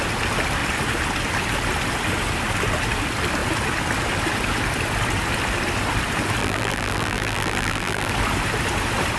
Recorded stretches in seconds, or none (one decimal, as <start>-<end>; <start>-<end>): 0.0-6.4; 8.1-9.2